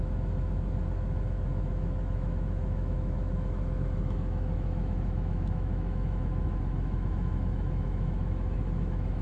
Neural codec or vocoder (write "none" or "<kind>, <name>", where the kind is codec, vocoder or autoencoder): autoencoder, DAC-VAE